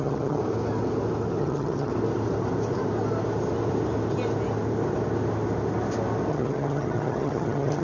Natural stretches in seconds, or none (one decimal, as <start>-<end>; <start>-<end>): 0.4-1.4; 1.9-6.3